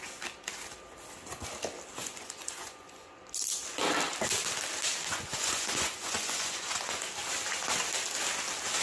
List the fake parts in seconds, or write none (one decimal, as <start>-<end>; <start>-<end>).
2.0-3.2; 5.1-7.1